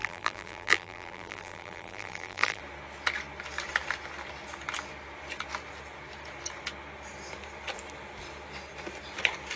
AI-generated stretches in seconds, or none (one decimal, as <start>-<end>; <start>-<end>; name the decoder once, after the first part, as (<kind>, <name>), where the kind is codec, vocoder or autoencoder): 0.0-2.6 (vocoder, BigVGAN v2)